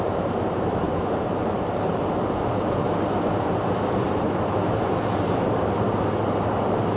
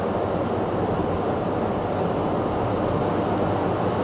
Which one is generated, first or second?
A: first